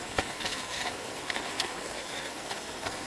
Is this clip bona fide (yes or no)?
no